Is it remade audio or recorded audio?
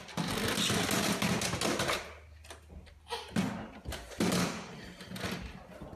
recorded